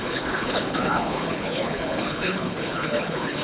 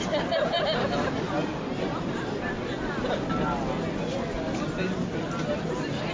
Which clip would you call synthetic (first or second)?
first